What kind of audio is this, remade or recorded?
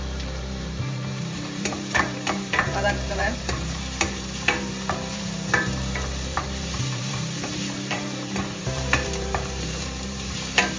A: remade